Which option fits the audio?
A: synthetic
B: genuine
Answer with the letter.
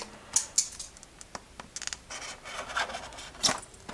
B